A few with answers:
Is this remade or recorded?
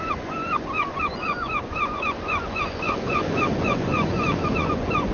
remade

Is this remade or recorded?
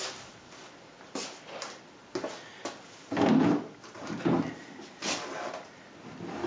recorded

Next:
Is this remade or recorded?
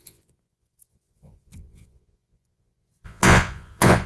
remade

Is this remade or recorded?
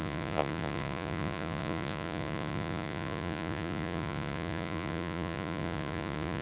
remade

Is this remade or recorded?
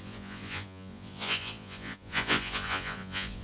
remade